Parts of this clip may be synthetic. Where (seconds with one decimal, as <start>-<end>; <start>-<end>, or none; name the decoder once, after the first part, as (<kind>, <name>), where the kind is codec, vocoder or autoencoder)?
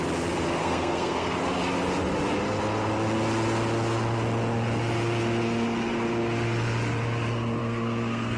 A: 0.6-1.4 (codec, SNAC); 7.6-8.4